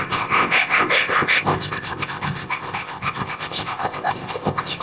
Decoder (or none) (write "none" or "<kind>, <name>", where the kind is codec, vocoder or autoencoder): codec, ZipCodec